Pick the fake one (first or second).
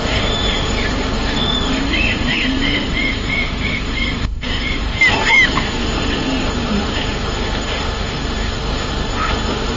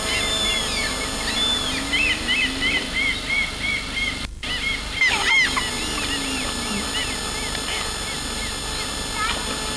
first